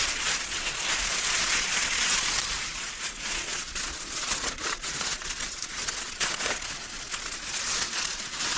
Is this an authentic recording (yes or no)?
no